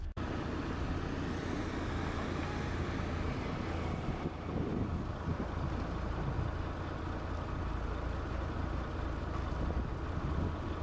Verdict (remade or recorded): recorded